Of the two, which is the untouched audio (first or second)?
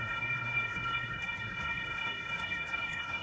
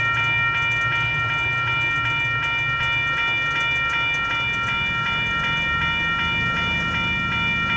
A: second